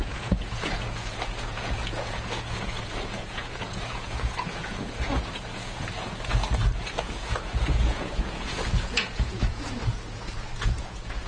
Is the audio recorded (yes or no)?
no